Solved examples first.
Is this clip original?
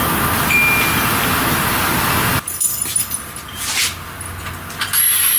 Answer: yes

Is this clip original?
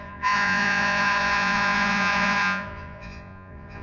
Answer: no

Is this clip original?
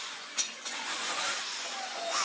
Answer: no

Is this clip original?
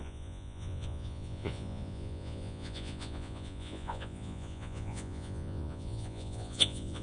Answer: no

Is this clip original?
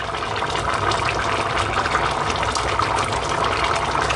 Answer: yes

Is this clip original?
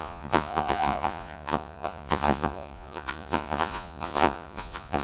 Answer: no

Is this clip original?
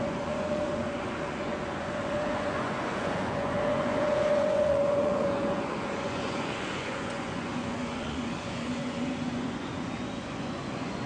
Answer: no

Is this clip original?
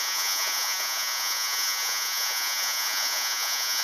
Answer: no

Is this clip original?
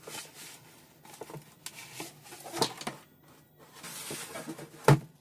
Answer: yes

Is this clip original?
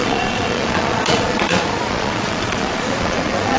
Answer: no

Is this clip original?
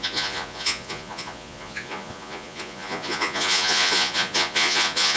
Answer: no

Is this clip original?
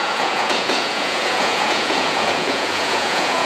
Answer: no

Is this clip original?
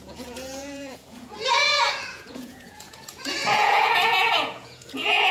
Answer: no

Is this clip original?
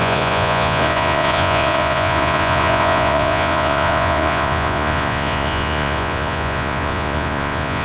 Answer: no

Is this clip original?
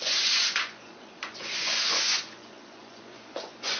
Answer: no